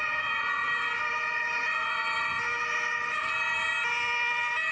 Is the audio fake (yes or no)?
no